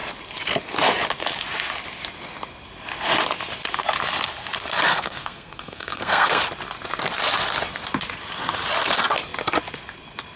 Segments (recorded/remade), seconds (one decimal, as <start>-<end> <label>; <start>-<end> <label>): 0.0-4.9 recorded; 4.9-6.4 remade; 6.4-10.4 recorded